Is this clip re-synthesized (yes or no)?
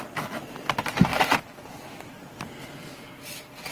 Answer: no